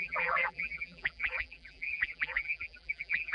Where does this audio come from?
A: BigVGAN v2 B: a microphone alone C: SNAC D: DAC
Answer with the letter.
A